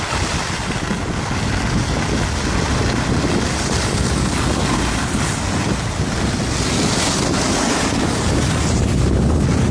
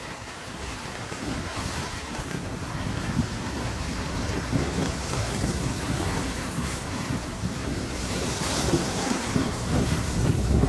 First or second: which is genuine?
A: first